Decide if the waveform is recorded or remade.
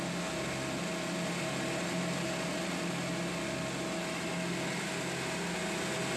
recorded